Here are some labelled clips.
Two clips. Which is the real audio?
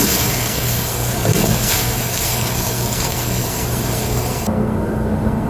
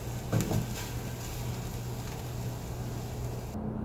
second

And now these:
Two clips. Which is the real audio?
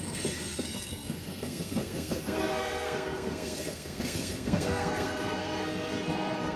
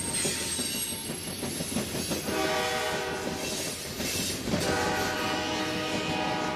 second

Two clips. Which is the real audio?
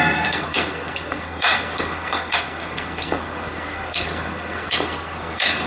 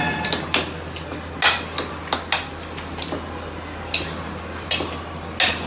second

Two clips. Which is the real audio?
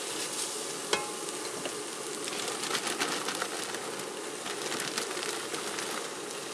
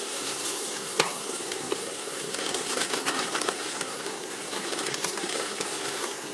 first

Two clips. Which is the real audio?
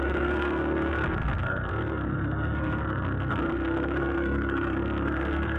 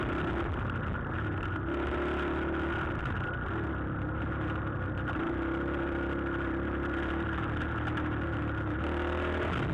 second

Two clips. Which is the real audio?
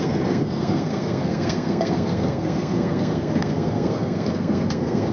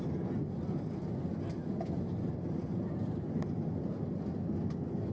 second